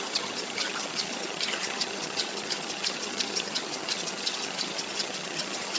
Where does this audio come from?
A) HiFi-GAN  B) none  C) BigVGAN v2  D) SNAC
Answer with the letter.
A